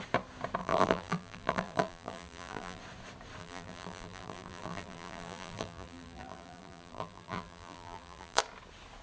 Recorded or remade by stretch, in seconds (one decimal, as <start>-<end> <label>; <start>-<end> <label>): 0.0-0.6 recorded; 0.6-2.8 remade; 2.8-3.4 recorded; 3.4-8.4 remade; 8.4-9.0 recorded